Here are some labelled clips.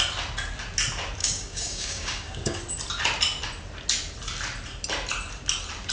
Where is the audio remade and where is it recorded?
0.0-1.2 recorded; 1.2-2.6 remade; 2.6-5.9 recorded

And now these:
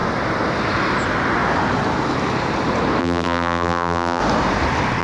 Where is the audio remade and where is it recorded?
0.0-3.0 recorded; 3.0-4.2 remade; 4.2-5.0 recorded

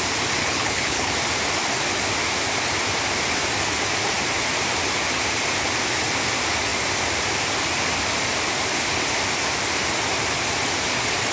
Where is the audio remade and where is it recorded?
0.0-0.4 recorded; 0.4-1.1 remade; 1.1-11.3 recorded

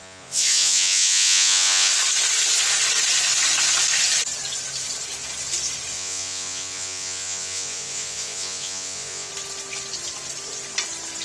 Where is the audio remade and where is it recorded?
0.0-1.9 remade; 1.9-5.9 recorded; 5.9-9.3 remade; 9.3-11.2 recorded

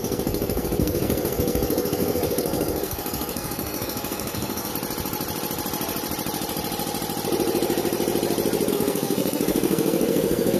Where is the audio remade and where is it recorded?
0.0-4.7 remade; 4.7-8.7 recorded; 8.7-10.6 remade

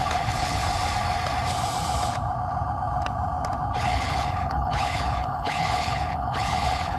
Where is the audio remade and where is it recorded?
0.0-0.7 remade; 0.7-3.8 recorded; 3.8-7.0 remade

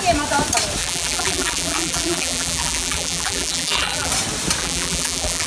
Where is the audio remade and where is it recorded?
0.0-0.8 recorded; 0.8-4.1 remade; 4.1-4.6 recorded; 4.6-5.5 remade